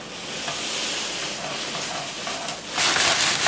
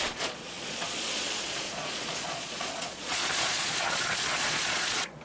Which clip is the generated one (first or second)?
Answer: second